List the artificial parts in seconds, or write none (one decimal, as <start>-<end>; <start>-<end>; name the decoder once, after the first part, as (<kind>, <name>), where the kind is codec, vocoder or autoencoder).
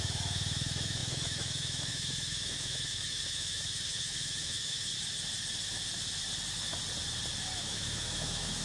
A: 0.0-4.9 (autoencoder, DAC-VAE); 7.6-8.6